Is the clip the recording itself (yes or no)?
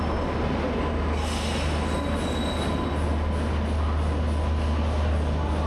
yes